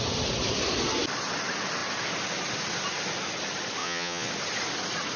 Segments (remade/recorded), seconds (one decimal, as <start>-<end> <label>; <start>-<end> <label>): 0.0-3.8 recorded; 3.8-4.3 remade; 4.3-5.2 recorded